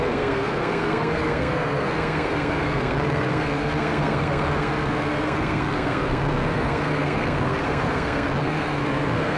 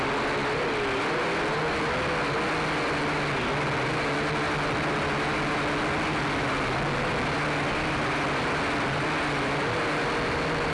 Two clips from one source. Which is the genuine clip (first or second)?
second